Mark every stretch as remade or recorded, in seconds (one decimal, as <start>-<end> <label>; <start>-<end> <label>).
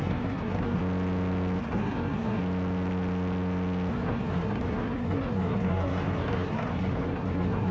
0.0-0.8 remade; 0.8-1.6 recorded; 1.6-2.4 remade; 2.4-3.9 recorded; 3.9-7.7 remade